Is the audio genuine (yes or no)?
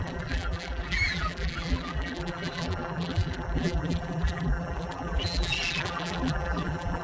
no